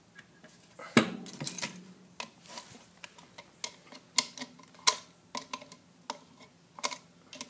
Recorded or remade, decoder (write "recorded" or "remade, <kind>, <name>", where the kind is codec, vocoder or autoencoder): recorded